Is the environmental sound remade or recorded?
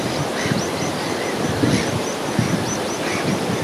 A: recorded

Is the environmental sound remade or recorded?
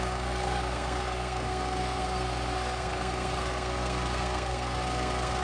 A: remade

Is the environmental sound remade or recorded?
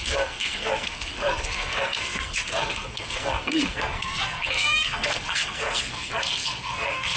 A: remade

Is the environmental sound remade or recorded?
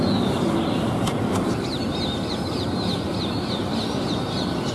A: recorded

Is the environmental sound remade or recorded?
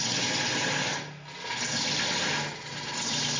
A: recorded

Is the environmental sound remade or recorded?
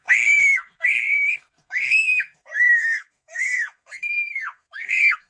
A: remade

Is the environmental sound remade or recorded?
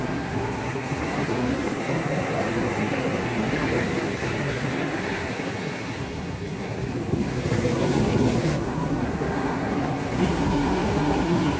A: remade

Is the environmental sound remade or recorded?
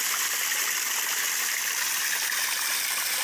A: recorded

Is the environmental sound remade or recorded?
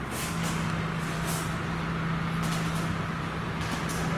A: recorded